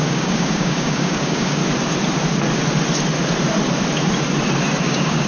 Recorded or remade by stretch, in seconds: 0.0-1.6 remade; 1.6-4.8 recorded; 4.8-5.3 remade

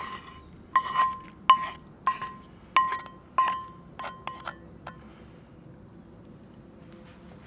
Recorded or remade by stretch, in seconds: 0.0-7.5 recorded

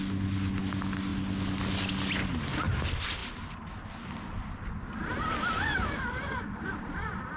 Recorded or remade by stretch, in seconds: 0.0-7.4 recorded

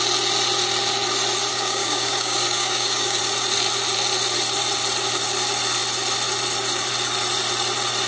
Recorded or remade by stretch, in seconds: 0.0-1.5 recorded; 1.5-3.2 remade; 3.2-8.1 recorded